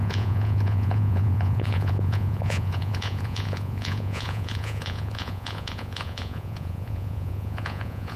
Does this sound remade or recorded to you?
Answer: remade